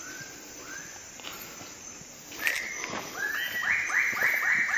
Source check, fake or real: real